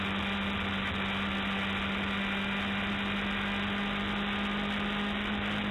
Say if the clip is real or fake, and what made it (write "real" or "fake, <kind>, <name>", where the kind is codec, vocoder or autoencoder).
real